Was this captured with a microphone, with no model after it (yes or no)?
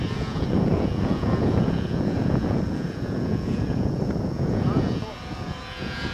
no